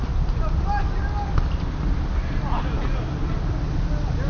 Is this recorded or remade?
recorded